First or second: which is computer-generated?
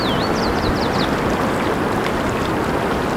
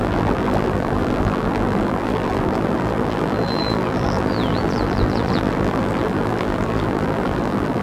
second